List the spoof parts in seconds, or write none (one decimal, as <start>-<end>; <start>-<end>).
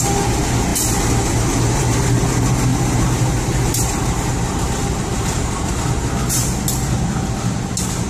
2.7-6.1